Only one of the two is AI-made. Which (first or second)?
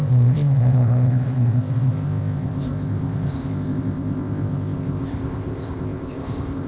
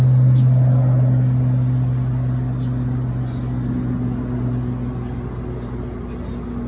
first